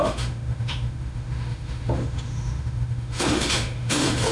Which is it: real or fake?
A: fake